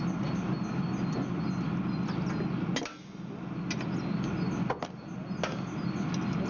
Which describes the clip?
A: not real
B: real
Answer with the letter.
B